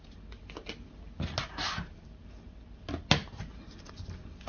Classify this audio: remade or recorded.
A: recorded